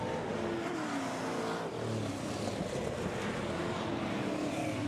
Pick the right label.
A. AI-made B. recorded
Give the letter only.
B